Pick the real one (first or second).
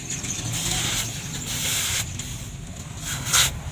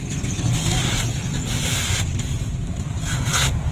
first